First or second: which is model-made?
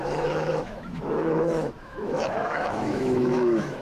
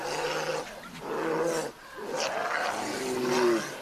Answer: first